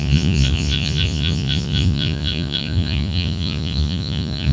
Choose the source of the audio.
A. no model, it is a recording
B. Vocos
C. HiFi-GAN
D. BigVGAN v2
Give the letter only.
B